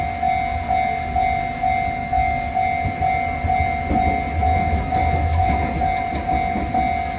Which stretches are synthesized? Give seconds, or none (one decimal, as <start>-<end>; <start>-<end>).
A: 2.0-2.5; 4.5-5.6